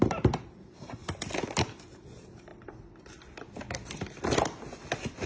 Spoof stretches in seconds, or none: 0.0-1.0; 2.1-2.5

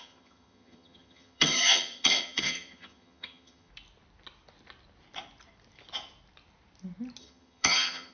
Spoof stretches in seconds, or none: 0.0-3.7; 7.2-8.1

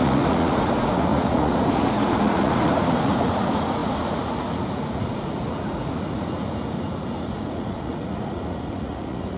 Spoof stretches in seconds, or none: 0.0-9.4